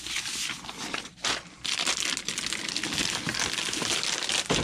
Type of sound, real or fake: real